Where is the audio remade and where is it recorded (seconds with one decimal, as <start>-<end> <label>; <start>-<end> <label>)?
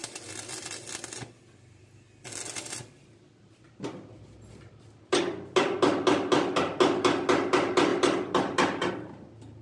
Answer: 0.0-9.6 recorded